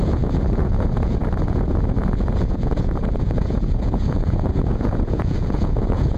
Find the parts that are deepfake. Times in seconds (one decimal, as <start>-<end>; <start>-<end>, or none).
0.0-6.2